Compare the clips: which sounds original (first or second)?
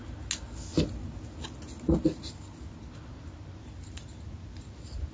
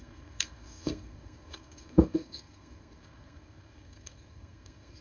first